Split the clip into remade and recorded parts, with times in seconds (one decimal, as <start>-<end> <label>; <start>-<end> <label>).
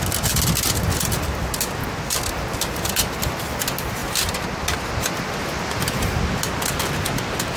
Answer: 0.0-7.6 recorded